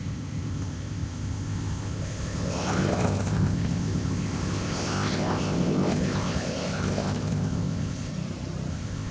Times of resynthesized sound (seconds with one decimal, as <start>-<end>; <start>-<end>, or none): 0.0-8.1; 8.7-9.1